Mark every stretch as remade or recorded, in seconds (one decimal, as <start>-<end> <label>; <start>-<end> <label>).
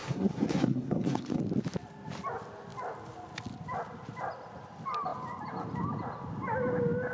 0.0-1.4 remade; 1.4-7.1 recorded